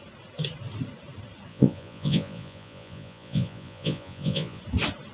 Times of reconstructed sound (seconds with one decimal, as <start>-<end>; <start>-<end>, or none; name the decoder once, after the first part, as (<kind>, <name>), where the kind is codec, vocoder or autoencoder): 1.5-4.6 (vocoder, Vocos)